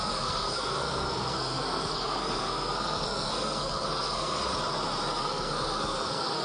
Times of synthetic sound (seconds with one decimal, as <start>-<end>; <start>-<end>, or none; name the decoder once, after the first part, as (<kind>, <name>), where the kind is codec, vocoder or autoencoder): 0.0-4.5 (codec, SNAC); 5.2-6.4

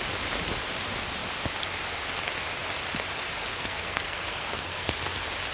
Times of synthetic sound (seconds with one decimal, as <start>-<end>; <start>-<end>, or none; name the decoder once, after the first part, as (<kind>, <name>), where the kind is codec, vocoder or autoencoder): 3.5-4.9 (codec, SNAC)

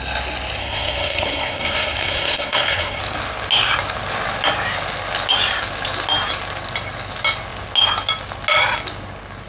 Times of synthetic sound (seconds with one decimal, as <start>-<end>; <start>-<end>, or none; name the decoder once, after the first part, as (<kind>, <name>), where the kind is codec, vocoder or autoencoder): 0.6-3.0 (codec, SNAC)